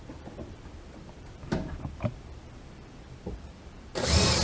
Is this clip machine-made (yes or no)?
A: yes